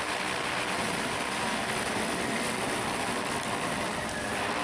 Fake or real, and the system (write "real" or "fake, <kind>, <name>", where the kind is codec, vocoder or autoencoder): real